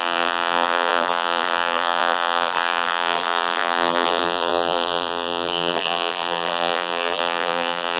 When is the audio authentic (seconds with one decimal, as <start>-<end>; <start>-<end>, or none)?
none